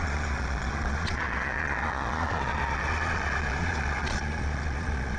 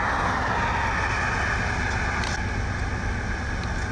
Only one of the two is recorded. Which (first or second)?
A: second